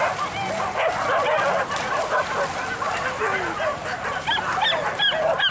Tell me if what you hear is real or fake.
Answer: real